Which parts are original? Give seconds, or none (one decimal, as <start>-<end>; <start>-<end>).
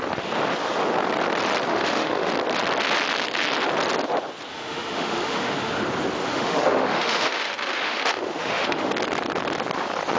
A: 0.0-1.7; 2.3-4.5; 5.7-6.2; 8.9-10.2